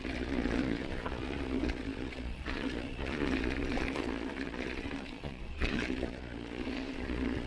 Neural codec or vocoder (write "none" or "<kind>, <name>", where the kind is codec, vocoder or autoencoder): vocoder, Vocos